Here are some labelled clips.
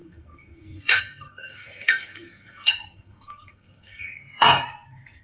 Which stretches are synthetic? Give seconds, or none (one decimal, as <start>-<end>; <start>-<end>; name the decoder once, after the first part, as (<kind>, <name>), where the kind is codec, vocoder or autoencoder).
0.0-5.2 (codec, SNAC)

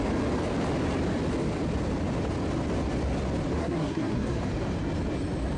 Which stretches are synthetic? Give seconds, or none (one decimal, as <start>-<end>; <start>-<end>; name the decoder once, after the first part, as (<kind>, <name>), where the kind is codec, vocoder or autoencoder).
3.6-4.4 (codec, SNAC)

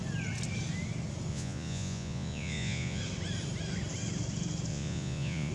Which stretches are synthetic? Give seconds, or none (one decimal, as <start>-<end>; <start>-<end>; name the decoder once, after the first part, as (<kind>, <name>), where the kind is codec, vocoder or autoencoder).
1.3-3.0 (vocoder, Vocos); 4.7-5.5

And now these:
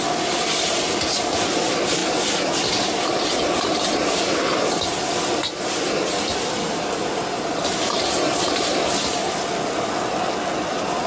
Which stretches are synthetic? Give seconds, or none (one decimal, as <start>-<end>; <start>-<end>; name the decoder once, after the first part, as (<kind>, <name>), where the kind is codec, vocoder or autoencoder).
none

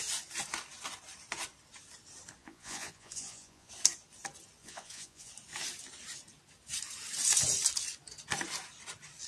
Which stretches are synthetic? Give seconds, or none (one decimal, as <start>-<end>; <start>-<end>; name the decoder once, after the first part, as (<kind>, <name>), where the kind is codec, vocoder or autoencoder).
2.4-3.7 (vocoder, Vocos); 4.6-5.3